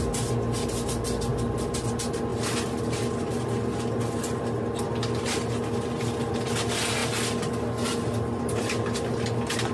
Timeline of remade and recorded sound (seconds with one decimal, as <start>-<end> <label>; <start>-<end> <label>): 0.0-9.7 recorded